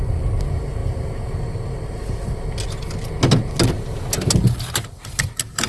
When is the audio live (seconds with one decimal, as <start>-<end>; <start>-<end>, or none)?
0.0-5.7